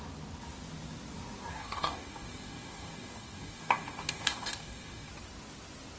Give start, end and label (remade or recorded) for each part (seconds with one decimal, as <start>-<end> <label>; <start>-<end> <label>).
0.0-1.5 recorded; 1.5-5.1 remade; 5.1-6.0 recorded